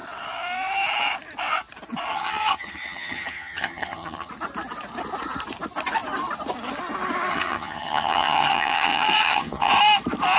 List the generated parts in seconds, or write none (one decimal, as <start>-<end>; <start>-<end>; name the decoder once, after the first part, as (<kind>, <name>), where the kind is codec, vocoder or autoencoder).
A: 2.1-4.3 (vocoder, HiFi-GAN); 7.3-9.7